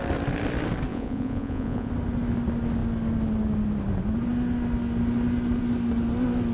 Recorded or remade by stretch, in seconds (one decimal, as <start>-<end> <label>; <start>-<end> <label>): 0.0-0.9 recorded; 0.9-1.9 remade; 1.9-6.5 recorded